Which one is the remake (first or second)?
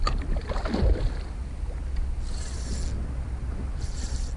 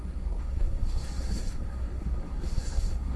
second